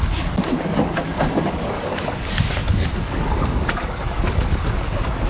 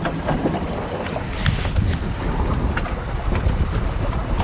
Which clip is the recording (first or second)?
second